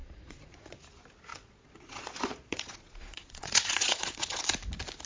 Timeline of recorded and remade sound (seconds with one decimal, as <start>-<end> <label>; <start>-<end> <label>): 0.0-0.8 remade; 0.8-1.3 recorded; 1.3-4.4 remade; 4.4-5.1 recorded